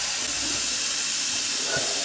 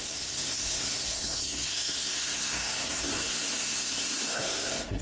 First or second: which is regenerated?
second